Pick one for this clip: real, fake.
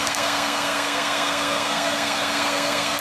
fake